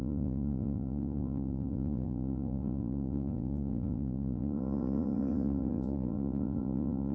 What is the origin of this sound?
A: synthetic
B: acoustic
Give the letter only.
A